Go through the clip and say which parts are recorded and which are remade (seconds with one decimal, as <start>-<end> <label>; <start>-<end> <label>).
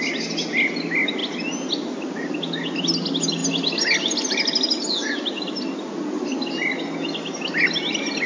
0.0-8.3 recorded